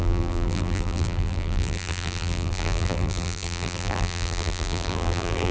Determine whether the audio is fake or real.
fake